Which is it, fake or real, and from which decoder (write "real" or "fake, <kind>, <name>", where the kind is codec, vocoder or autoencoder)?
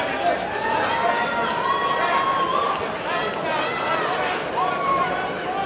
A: real